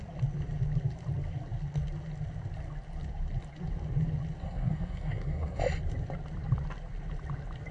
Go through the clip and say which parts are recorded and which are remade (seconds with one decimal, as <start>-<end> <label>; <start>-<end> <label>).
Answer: 0.0-4.4 recorded; 4.4-5.6 remade; 5.6-7.7 recorded